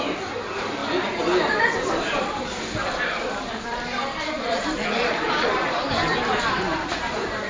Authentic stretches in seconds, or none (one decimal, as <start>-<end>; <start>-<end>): 0.8-1.5